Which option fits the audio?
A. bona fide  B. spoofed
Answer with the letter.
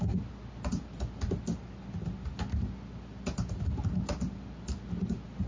A